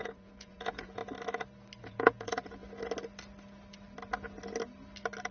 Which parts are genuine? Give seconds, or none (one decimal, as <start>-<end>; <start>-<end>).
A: 1.0-1.8; 2.6-5.3